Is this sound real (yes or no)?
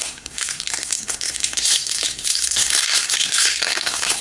no